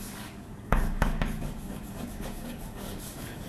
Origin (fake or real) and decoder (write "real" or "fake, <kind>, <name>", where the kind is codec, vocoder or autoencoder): fake, codec, DAC